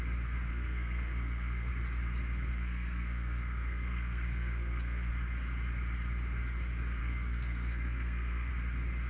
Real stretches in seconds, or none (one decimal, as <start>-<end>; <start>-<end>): 0.0-0.5; 1.7-2.5; 5.1-7.0; 8.5-9.1